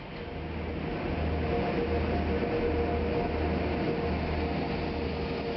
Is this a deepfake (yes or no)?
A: no